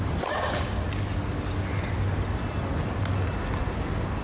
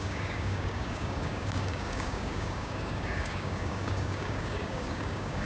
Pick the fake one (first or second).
second